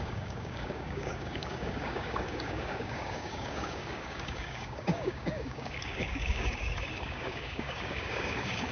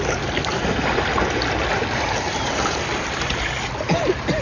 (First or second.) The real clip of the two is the second